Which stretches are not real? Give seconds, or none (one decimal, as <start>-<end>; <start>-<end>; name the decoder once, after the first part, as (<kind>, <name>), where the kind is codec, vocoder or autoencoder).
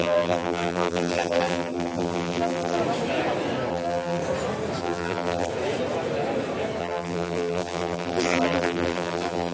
0.0-2.8 (vocoder, BigVGAN v2); 3.7-4.2; 4.8-5.5; 6.8-9.5